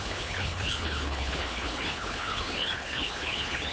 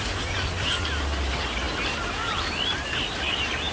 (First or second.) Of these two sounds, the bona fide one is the second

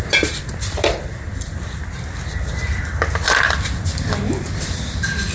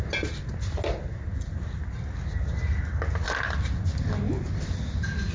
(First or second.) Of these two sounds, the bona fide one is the second